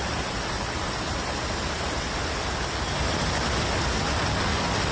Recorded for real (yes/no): yes